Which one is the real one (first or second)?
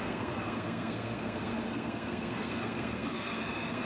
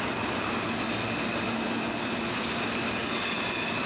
second